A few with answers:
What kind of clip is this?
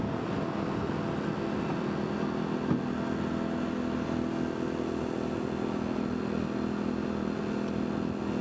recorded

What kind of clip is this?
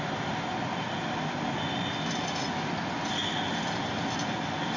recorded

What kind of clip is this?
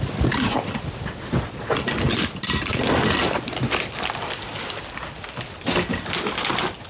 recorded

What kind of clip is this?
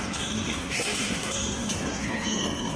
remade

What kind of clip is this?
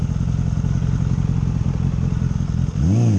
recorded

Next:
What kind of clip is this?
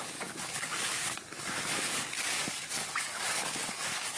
remade